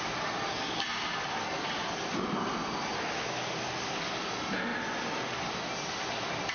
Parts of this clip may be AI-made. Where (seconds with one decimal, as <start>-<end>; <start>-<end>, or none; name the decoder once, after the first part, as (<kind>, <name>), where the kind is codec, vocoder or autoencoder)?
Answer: none